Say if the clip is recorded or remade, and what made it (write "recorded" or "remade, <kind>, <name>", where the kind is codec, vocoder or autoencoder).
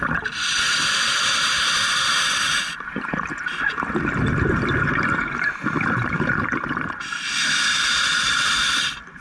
recorded